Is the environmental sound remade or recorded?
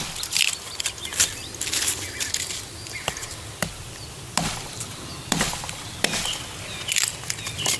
recorded